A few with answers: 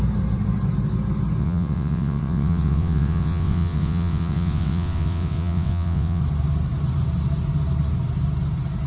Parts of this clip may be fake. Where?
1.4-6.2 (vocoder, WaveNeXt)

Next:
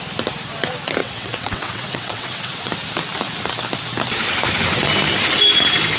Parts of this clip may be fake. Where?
1.0-2.7 (vocoder, WaveNeXt)

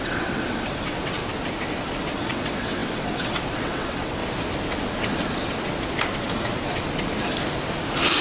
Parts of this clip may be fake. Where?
0.0-1.2 (vocoder, WaveNeXt); 2.1-4.2

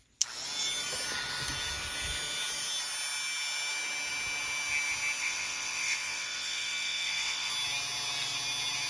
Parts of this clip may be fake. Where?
5.2-7.5 (vocoder, WaveNeXt)